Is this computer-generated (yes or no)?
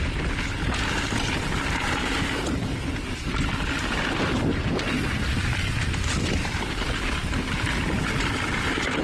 no